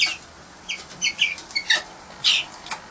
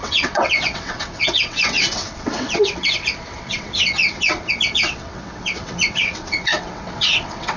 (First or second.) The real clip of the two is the first